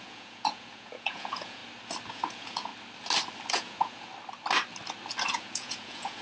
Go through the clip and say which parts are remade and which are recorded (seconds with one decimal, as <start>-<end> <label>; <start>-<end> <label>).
0.0-1.6 remade; 1.6-2.1 recorded; 2.1-2.7 remade; 2.7-3.5 recorded; 3.5-4.1 remade; 4.1-5.3 recorded; 5.3-6.2 remade